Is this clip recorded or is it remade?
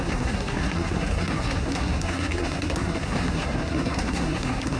remade